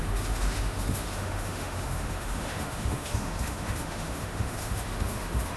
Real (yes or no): no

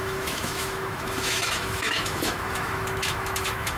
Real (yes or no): no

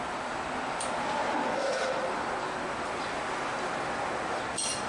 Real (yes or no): yes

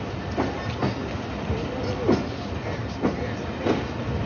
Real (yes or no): yes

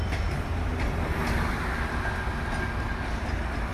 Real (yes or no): yes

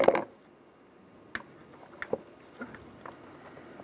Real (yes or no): yes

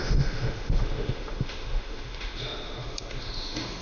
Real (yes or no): no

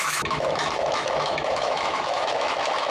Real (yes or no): no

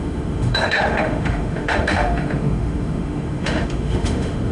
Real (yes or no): no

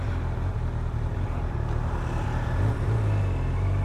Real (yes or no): yes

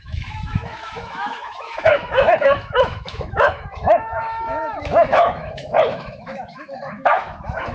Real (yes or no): no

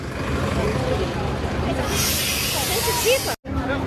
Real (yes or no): yes